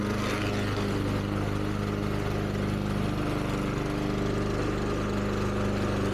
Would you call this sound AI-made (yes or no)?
no